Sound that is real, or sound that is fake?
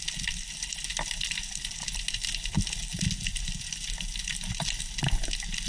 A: real